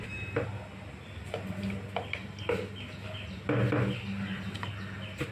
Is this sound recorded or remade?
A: recorded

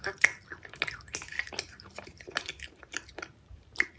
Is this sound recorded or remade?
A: recorded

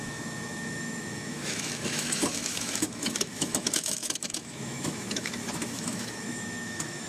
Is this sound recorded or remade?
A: remade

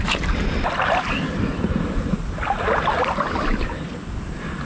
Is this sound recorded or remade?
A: recorded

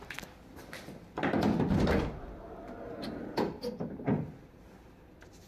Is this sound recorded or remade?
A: recorded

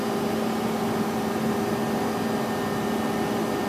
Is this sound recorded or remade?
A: recorded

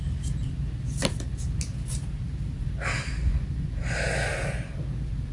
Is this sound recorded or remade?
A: recorded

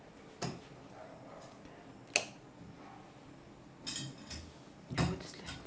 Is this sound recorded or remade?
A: recorded